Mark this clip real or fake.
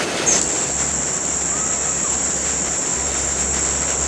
real